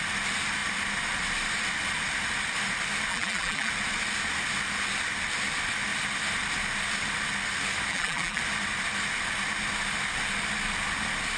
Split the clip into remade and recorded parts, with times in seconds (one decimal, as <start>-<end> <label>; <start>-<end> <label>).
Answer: 0.0-3.1 recorded; 3.1-3.7 remade; 3.7-7.9 recorded; 7.9-8.4 remade; 8.4-11.4 recorded